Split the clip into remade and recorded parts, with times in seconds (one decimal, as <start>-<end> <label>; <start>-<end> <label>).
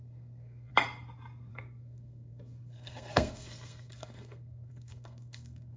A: 0.0-0.7 remade; 0.7-1.5 recorded; 1.5-5.8 remade